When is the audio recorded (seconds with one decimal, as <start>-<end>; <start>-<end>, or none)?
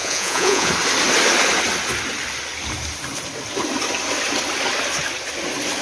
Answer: 0.7-5.8